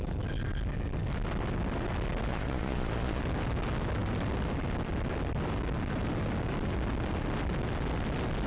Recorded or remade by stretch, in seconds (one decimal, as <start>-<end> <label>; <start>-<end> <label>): 0.0-2.3 recorded; 2.3-3.2 remade; 3.2-8.5 recorded